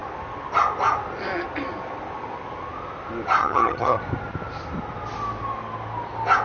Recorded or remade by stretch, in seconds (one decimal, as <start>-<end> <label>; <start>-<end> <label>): 0.0-3.4 recorded; 3.4-4.0 remade; 4.0-6.4 recorded